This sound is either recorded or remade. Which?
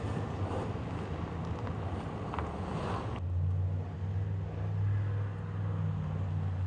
recorded